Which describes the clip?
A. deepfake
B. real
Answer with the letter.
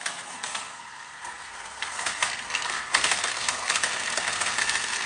A